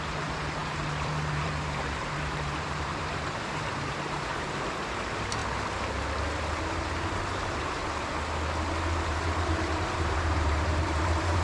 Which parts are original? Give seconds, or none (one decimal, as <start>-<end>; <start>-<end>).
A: 5.4-6.7; 7.8-9.0